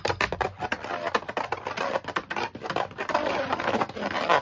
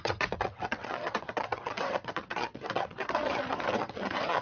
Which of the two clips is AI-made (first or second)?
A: second